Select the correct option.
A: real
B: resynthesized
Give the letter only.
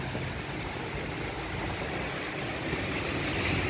A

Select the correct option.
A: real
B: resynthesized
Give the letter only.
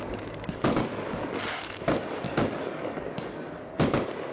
B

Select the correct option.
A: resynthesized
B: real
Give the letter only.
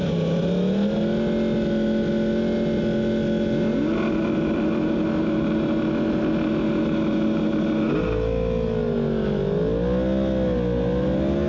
B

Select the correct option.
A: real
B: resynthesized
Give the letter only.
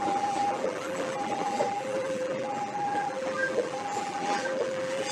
B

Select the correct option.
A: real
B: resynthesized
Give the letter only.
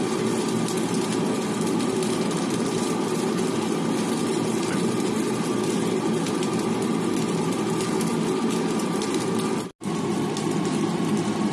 A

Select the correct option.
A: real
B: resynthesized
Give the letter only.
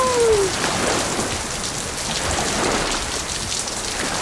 A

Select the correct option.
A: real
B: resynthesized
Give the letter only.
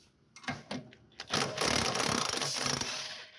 A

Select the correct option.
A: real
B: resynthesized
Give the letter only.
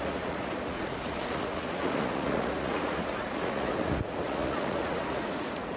B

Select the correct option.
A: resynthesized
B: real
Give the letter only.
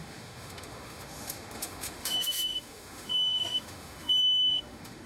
A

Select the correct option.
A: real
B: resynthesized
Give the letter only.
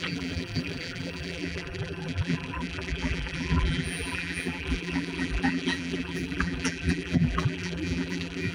B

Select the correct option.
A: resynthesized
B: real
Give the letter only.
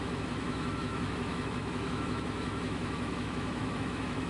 A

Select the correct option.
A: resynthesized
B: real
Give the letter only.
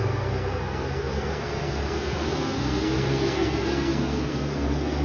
A